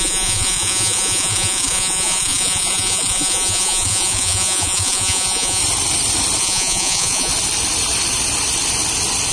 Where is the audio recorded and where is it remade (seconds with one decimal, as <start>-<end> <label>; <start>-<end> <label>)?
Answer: 0.0-5.6 remade; 5.6-6.4 recorded; 6.4-7.3 remade; 7.3-9.3 recorded